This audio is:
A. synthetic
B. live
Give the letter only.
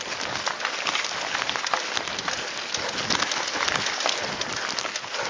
B